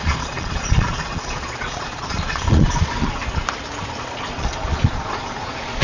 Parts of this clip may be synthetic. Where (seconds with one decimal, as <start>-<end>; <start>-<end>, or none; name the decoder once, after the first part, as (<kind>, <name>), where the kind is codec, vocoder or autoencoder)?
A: 0.0-3.2 (vocoder, Vocos); 3.9-5.8